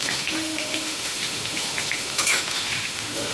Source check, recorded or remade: remade